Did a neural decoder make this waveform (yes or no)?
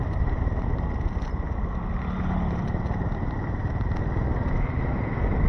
no